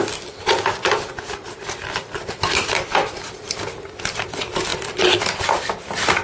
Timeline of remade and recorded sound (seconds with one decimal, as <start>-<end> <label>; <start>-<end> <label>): 0.0-6.2 recorded